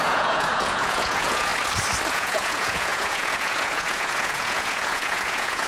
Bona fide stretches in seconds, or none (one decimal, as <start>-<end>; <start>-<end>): 1.5-2.1